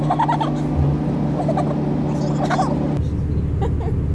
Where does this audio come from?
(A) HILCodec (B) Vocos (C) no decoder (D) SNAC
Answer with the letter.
C